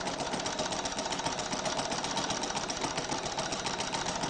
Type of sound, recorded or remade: recorded